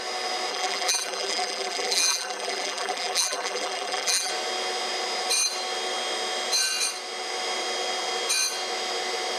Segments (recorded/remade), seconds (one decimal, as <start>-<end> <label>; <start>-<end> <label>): 0.0-0.5 recorded; 0.5-4.3 remade; 4.3-9.4 recorded